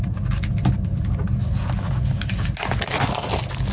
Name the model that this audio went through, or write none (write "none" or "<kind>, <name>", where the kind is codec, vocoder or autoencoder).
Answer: none